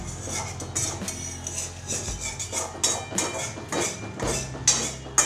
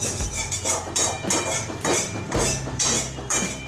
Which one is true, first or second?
first